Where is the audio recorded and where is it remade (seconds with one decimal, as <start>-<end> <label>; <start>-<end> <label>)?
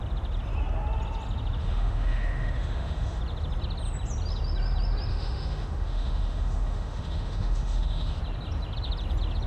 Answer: 0.0-1.6 recorded; 1.6-3.2 remade; 3.2-5.1 recorded; 5.1-8.2 remade; 8.2-9.5 recorded